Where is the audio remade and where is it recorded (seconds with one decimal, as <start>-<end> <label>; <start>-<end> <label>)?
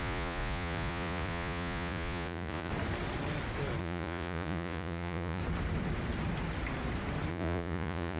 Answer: 0.0-2.7 remade; 2.7-3.8 recorded; 3.8-5.4 remade; 5.4-7.3 recorded; 7.3-8.2 remade